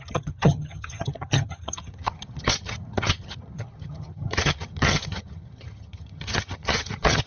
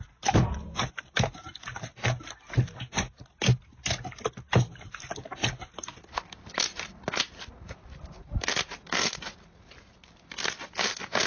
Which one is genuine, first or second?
second